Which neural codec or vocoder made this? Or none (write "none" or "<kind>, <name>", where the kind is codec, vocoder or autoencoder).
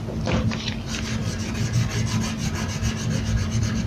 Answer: none